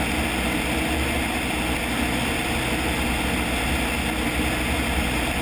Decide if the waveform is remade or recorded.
recorded